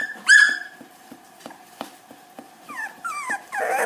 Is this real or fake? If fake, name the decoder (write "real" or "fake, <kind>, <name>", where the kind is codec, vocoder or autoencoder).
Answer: fake, vocoder, BigVGAN v2